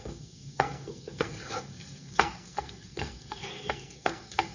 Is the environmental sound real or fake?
fake